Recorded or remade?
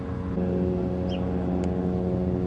recorded